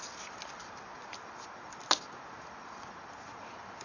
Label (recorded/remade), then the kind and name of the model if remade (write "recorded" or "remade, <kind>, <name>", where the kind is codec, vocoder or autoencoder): recorded